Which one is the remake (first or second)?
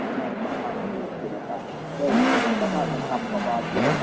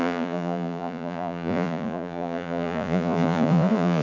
second